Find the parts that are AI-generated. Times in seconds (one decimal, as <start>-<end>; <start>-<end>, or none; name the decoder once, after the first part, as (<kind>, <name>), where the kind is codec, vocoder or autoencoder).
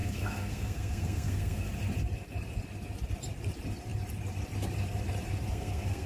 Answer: 0.0-1.7 (codec, SNAC); 5.5-6.1